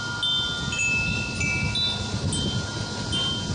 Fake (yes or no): no